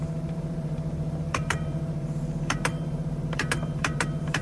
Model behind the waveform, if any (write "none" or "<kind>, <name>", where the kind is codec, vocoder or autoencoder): vocoder, BigVGAN v2